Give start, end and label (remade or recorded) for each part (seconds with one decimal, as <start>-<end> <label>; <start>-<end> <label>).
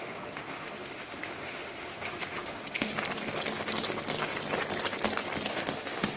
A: 0.0-2.9 remade; 2.9-5.5 recorded; 5.5-6.2 remade